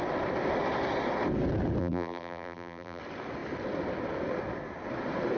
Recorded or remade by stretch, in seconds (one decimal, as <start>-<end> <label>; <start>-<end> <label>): 0.0-1.8 recorded; 1.8-3.0 remade; 3.0-5.4 recorded